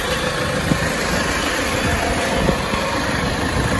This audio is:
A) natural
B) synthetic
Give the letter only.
A